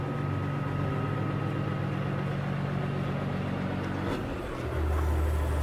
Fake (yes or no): no